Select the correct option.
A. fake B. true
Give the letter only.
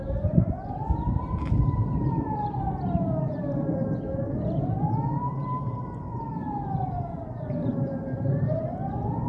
A